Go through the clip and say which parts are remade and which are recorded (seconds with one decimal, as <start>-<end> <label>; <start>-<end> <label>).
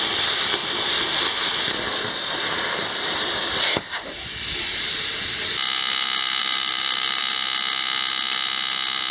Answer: 0.0-0.6 recorded; 0.6-1.2 remade; 1.2-2.9 recorded; 2.9-5.2 remade; 5.2-6.4 recorded; 6.4-7.2 remade; 7.2-9.1 recorded